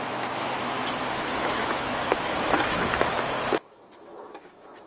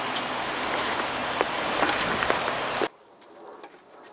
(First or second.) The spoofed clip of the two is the first